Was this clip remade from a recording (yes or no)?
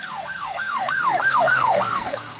yes